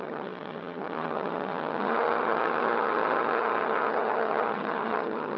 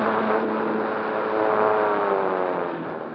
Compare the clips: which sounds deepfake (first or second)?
first